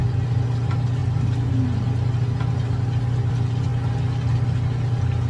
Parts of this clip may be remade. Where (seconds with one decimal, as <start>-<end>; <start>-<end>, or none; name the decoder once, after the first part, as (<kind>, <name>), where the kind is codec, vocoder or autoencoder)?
none